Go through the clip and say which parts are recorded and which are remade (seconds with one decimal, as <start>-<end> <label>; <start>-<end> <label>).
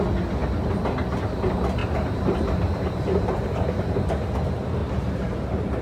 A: 0.0-1.8 recorded; 1.8-4.2 remade; 4.2-4.8 recorded; 4.8-5.8 remade